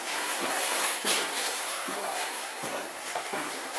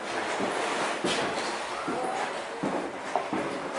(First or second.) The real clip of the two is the second